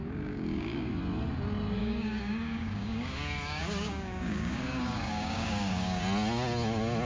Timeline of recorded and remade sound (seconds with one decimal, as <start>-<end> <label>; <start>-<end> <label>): 0.0-0.9 remade; 0.9-1.8 recorded; 1.8-6.0 remade; 6.0-7.0 recorded